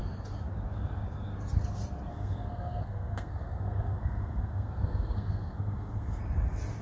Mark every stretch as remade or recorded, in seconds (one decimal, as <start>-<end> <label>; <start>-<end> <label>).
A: 0.0-2.1 recorded; 2.1-6.2 remade; 6.2-6.8 recorded